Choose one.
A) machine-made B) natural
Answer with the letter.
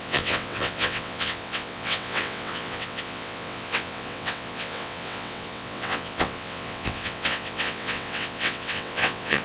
A